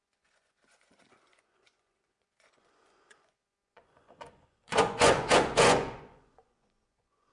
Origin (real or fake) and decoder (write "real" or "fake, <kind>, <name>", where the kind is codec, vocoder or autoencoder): fake, vocoder, Vocos